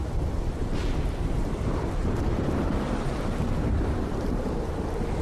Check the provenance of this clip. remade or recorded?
remade